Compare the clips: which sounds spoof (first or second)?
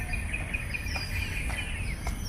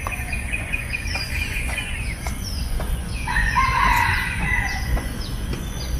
second